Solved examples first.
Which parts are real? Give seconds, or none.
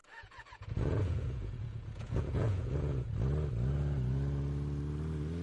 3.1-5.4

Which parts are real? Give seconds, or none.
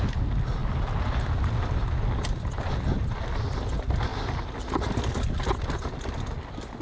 0.0-6.8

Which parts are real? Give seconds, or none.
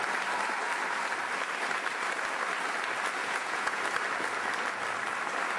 0.0-3.2; 3.8-5.6